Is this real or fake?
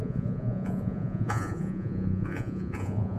fake